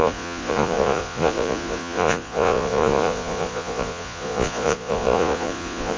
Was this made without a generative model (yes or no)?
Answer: no